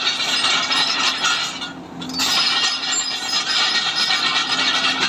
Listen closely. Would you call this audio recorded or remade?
recorded